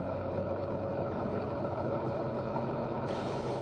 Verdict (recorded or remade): remade